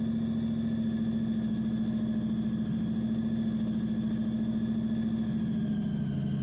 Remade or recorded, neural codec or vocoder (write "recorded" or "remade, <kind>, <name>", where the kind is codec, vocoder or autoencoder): recorded